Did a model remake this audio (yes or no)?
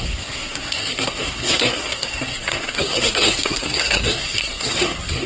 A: yes